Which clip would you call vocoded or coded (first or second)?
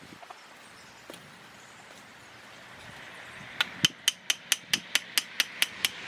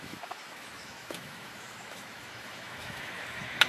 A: second